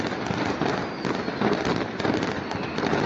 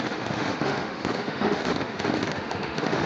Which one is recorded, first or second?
first